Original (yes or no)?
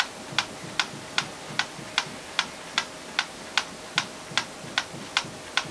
yes